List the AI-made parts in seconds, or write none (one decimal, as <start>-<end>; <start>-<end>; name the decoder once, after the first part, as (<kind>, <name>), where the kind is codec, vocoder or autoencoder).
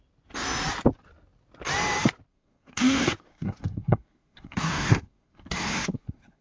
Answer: 2.3-6.4 (codec, SNAC)